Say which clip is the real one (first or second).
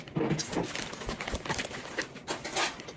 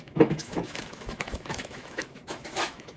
first